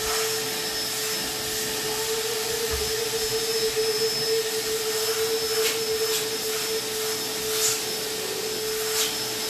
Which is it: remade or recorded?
recorded